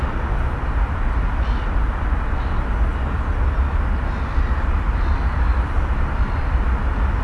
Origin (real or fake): real